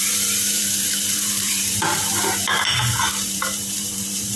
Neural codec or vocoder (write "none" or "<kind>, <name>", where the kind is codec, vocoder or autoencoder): vocoder, BigVGAN v2